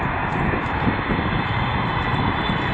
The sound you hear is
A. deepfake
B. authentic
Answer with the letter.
B